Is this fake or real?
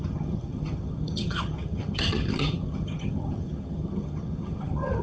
fake